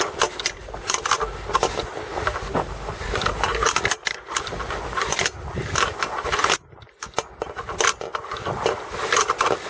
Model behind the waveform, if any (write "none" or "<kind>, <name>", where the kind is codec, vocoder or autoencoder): none